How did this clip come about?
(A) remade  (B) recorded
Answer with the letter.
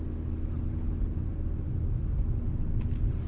B